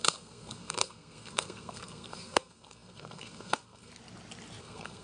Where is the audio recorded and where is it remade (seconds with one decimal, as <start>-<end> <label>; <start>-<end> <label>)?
0.0-3.9 remade; 3.9-4.6 recorded; 4.6-5.0 remade